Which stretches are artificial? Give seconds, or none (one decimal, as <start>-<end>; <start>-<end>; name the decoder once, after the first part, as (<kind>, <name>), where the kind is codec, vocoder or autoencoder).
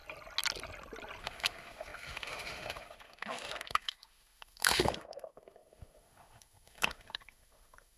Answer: 1.2-8.0 (autoencoder, DAC-VAE)